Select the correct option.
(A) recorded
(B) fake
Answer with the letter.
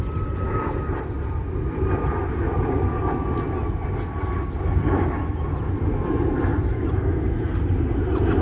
A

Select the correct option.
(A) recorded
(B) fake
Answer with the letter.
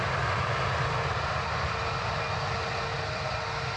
A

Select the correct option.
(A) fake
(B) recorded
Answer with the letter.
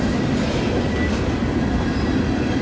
B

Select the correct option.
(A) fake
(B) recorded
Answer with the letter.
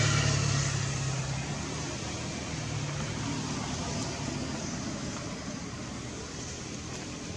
B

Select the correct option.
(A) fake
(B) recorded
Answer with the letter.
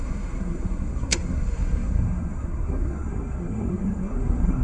A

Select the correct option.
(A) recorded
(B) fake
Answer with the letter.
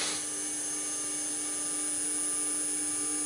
A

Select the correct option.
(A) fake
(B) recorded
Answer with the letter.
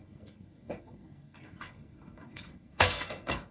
A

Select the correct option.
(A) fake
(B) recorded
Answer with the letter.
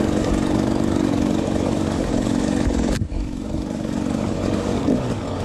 A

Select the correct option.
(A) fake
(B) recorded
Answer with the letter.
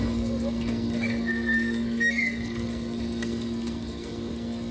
A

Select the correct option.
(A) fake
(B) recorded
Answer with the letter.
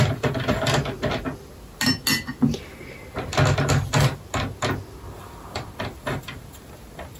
B